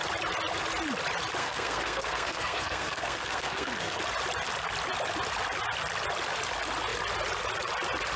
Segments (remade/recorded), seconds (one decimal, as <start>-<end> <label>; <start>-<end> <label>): 0.0-1.4 recorded; 1.4-4.0 remade; 4.0-8.2 recorded

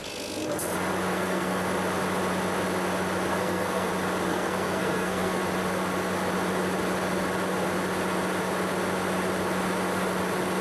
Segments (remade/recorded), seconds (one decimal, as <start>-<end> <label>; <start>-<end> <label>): 0.0-1.1 recorded; 1.1-1.7 remade; 1.7-3.3 recorded; 3.3-3.9 remade; 3.9-4.3 recorded; 4.3-5.4 remade; 5.4-10.6 recorded

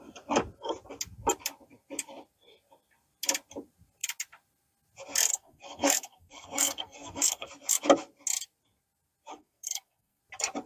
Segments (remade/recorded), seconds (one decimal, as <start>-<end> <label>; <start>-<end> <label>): 0.0-5.3 recorded; 5.3-7.5 remade; 7.5-9.3 recorded; 9.3-10.2 remade; 10.2-10.7 recorded

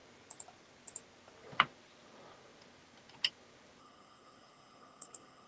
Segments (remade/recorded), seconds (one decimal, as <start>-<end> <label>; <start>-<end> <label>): 0.0-3.8 recorded; 3.8-5.5 remade

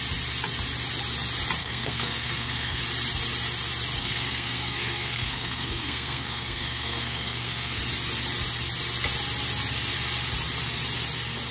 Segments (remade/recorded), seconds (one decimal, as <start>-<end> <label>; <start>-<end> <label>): 0.0-1.6 recorded; 1.6-2.8 remade; 2.8-4.0 recorded; 4.0-7.8 remade; 7.8-11.5 recorded

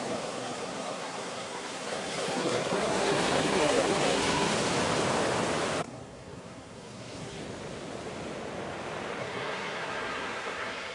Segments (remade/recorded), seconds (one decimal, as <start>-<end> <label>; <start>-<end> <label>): 0.0-4.5 remade; 4.5-5.8 recorded; 5.8-7.4 remade; 7.4-9.2 recorded; 9.2-10.9 remade

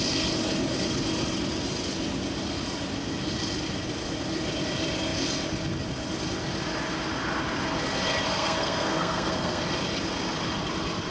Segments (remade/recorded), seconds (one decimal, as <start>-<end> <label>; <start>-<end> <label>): 0.0-8.3 recorded; 8.3-9.6 remade; 9.6-11.1 recorded

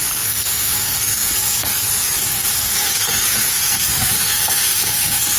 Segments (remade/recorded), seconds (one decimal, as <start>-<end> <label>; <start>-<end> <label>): 0.0-5.4 remade